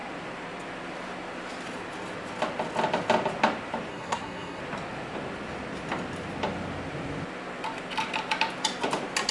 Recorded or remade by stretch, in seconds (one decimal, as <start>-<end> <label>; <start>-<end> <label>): 0.0-3.9 recorded; 3.9-4.6 remade; 4.6-9.3 recorded